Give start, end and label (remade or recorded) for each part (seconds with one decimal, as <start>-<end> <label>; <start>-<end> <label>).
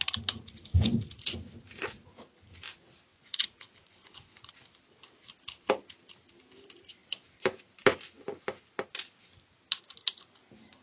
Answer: 0.0-3.1 recorded; 3.1-4.5 remade; 4.5-10.8 recorded